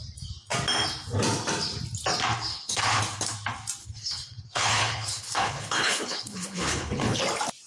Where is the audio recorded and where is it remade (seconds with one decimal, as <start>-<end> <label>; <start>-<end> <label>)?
0.0-2.5 recorded; 2.5-3.0 remade; 3.0-3.8 recorded; 3.8-7.2 remade; 7.2-7.7 recorded